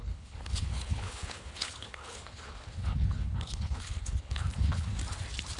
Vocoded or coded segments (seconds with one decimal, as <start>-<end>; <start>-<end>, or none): 0.0-4.9